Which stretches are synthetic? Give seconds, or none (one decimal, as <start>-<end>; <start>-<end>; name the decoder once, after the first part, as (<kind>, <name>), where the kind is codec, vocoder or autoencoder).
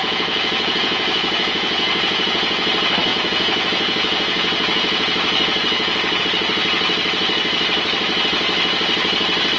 0.0-2.7 (vocoder, Vocos); 3.1-6.2